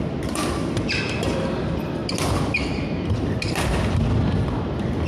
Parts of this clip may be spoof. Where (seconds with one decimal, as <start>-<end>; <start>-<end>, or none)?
none

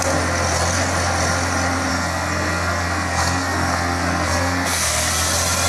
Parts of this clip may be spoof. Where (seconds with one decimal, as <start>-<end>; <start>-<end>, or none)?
1.9-5.1

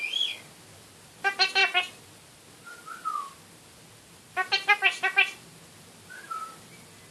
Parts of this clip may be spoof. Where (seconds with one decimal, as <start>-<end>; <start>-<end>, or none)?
none